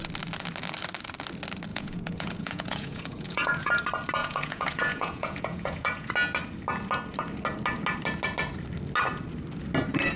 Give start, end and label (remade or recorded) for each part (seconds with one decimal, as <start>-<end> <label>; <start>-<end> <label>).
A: 0.0-1.7 recorded; 1.7-3.7 remade; 3.7-4.2 recorded; 4.2-6.1 remade; 6.1-10.2 recorded